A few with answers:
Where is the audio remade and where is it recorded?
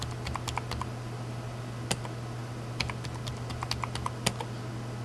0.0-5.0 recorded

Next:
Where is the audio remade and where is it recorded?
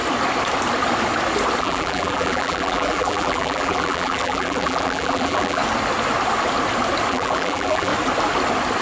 0.0-1.6 recorded; 1.6-5.6 remade; 5.6-7.1 recorded; 7.1-7.9 remade; 7.9-8.8 recorded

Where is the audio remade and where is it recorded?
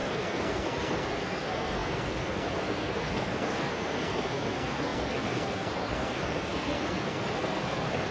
0.0-8.1 remade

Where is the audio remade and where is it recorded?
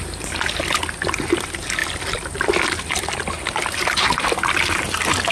0.0-5.3 recorded